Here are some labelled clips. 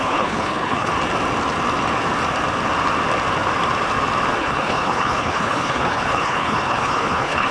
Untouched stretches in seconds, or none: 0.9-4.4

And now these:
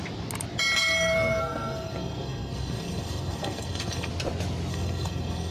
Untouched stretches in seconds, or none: 0.0-0.8; 4.1-4.7

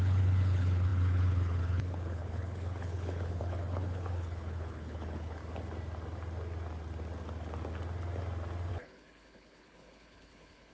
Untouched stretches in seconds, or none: 5.4-8.7

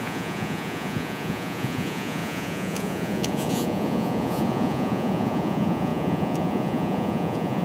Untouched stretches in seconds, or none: none

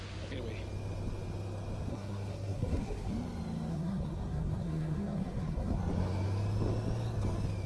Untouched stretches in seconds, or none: 0.0-1.9; 3.1-3.7; 5.8-7.7

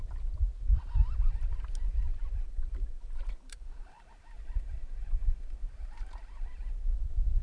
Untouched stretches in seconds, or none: 0.0-2.1; 4.1-7.4

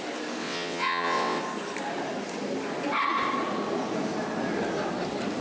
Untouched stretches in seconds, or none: 0.0-0.4; 1.4-5.4